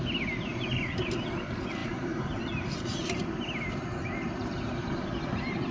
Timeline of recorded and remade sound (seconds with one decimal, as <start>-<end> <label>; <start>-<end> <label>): 0.0-0.5 recorded; 0.5-1.1 remade; 1.1-1.8 recorded; 1.8-5.0 remade; 5.0-5.7 recorded

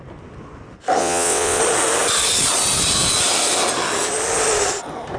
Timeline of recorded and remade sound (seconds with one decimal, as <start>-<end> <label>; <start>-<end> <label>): 0.0-1.0 recorded; 1.0-1.6 remade; 1.6-5.2 recorded

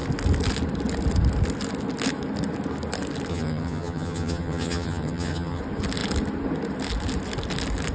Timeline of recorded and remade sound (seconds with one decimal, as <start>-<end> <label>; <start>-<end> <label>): 0.0-3.3 recorded; 3.3-5.6 remade; 5.6-7.9 recorded

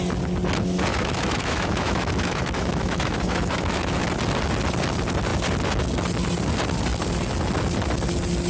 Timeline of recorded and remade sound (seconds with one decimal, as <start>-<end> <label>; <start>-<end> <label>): 0.0-0.9 recorded; 0.9-4.0 remade; 4.0-8.5 recorded